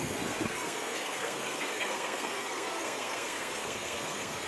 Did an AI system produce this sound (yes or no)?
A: yes